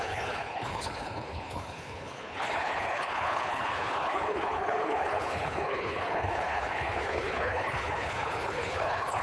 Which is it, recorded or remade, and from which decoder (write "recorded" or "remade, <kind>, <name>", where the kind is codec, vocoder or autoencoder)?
remade, codec, HILCodec